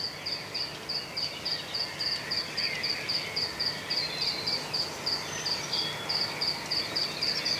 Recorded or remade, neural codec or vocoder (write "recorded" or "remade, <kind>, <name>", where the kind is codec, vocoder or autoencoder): recorded